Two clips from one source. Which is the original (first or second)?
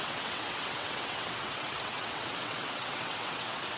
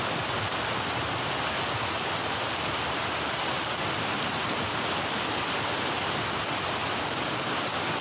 second